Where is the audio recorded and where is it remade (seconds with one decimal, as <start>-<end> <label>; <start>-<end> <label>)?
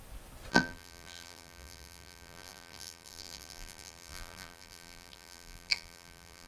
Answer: 0.0-0.5 recorded; 0.5-6.5 remade